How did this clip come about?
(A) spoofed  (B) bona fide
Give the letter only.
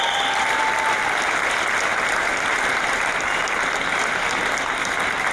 B